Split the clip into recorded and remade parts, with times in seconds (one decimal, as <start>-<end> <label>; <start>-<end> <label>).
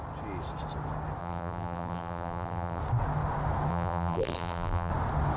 0.0-1.2 recorded; 1.2-2.8 remade; 2.8-3.7 recorded; 3.7-4.9 remade; 4.9-5.4 recorded